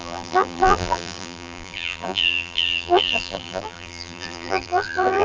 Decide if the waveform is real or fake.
fake